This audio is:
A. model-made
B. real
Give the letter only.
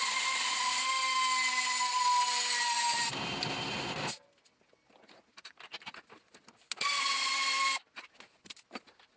B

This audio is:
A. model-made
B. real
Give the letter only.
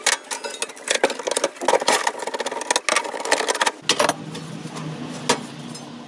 B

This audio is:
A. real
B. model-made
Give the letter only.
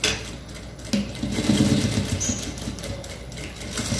A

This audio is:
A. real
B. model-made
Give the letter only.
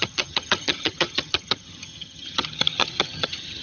B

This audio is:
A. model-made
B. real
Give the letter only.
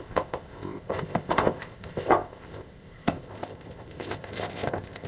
A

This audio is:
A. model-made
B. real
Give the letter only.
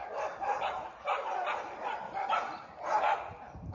B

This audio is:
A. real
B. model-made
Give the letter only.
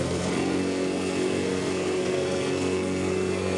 B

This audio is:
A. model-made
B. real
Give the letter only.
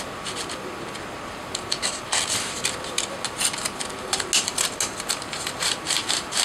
B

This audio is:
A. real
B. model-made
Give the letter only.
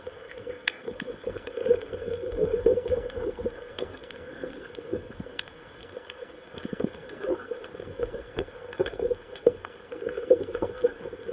B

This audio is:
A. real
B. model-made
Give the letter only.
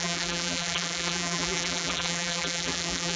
B